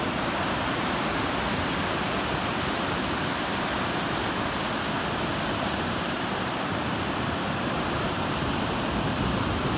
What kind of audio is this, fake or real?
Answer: fake